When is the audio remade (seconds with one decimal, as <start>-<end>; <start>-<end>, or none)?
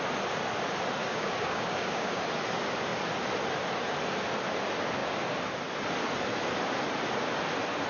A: 1.0-2.2